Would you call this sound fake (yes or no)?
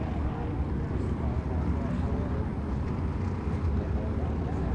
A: no